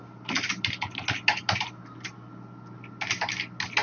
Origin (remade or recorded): recorded